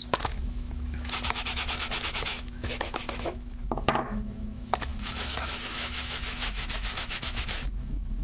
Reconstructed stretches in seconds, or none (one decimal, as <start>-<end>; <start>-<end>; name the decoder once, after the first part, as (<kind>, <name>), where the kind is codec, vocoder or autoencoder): 0.0-8.2 (autoencoder, DAC-VAE)